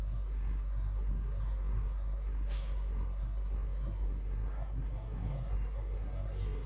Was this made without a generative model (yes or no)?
no